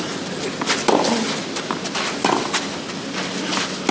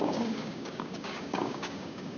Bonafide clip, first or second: first